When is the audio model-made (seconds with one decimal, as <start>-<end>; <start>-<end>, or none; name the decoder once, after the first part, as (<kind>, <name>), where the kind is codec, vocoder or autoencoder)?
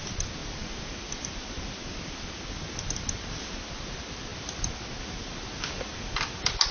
none